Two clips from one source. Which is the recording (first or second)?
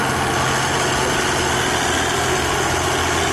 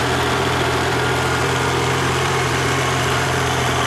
first